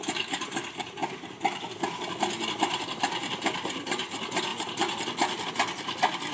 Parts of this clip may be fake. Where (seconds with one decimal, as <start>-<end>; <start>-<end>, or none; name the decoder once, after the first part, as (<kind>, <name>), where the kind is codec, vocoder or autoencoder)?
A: none